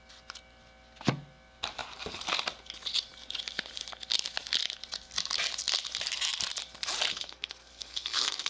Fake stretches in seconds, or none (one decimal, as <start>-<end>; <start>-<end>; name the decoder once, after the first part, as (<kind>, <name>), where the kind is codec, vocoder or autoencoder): 7.1-8.5 (codec, SNAC)